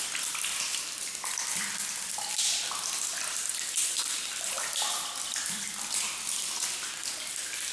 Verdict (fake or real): real